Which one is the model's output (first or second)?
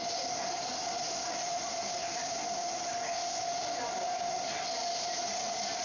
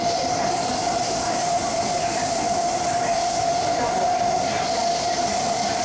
second